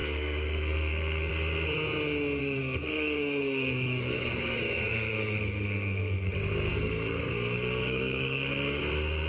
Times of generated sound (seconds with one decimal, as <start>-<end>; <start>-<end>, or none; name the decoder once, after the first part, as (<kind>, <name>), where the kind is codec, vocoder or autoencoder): 0.0-1.3 (codec, SNAC); 2.4-6.3; 6.7-8.8